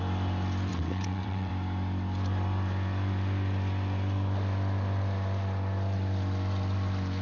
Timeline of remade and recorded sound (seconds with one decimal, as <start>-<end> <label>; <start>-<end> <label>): 0.0-0.7 recorded; 0.7-1.5 remade; 1.5-7.2 recorded